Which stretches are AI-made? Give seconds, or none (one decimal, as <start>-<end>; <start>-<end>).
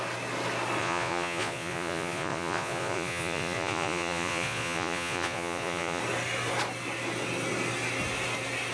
0.8-6.0